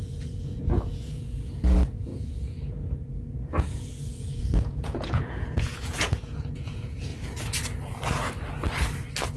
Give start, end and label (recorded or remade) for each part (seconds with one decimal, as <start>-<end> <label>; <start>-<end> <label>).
0.0-7.1 remade; 7.1-9.4 recorded